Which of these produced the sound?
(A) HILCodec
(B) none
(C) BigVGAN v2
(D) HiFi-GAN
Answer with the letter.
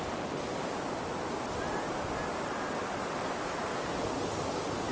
B